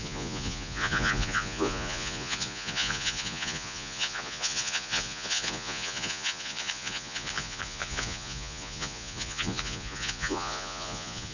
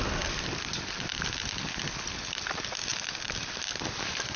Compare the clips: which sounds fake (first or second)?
first